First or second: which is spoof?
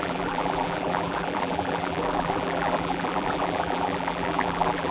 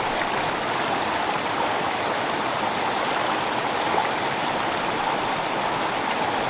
first